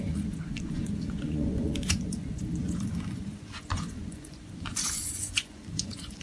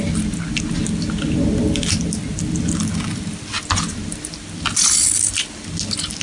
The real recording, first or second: second